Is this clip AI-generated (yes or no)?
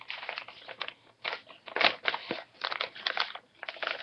no